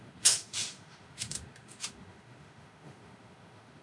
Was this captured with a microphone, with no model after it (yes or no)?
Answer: no